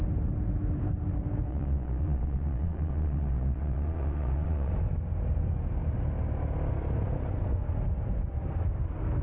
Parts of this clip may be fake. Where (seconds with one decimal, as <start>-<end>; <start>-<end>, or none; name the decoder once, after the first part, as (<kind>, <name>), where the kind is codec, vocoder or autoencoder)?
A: 1.5-4.7 (vocoder, Vocos)